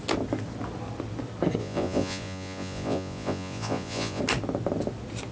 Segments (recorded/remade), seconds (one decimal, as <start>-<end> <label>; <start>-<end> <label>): 0.0-1.6 recorded; 1.6-4.2 remade; 4.2-5.3 recorded